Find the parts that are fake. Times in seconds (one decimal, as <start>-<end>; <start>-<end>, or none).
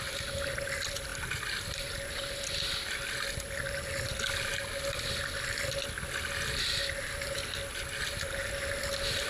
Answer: none